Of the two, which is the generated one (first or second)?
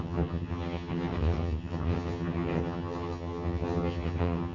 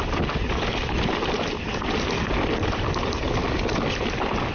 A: first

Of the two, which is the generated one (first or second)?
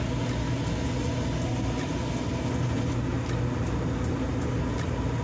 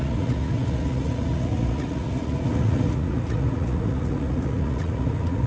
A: second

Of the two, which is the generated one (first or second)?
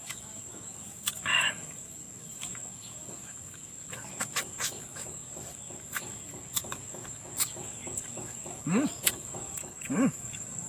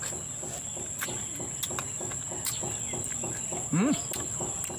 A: first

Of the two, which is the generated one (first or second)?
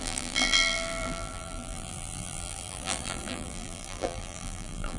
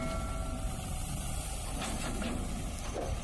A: first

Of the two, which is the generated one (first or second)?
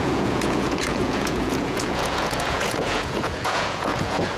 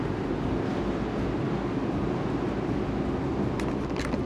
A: first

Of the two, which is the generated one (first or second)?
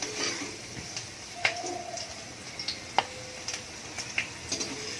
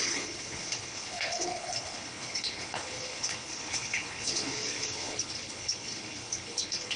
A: second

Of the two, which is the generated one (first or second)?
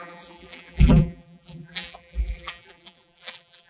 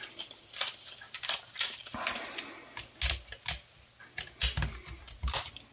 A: first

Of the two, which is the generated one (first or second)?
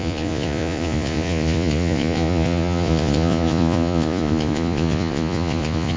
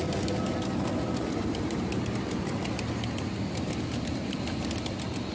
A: first